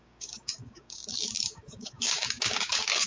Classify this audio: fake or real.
fake